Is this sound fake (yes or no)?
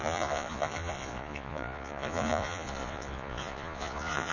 yes